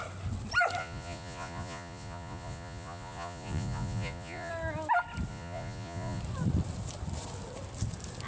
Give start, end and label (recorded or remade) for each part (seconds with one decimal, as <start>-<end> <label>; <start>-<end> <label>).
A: 0.0-0.8 recorded; 0.8-4.5 remade; 4.5-5.3 recorded; 5.3-6.2 remade; 6.2-8.3 recorded